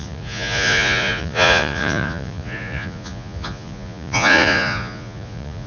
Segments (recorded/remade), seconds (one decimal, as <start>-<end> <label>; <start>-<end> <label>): 0.0-5.7 remade